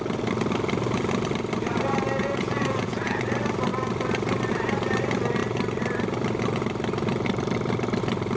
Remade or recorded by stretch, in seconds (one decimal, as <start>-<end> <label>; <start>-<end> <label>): 0.0-2.2 recorded; 2.2-3.2 remade; 3.2-8.4 recorded